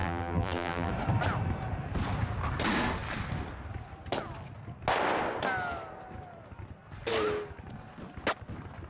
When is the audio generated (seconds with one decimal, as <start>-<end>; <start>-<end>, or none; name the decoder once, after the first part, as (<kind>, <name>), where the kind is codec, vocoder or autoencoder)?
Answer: 0.0-0.9 (vocoder, BigVGAN v2)